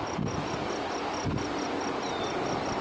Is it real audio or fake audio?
real